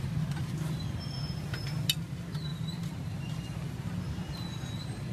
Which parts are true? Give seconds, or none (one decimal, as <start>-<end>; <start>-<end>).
0.0-2.5; 4.0-5.1